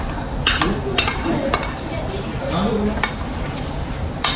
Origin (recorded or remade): recorded